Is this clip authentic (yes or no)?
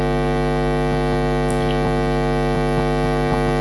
yes